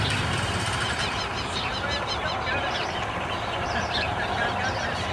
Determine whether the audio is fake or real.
fake